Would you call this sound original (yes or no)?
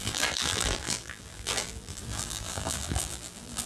no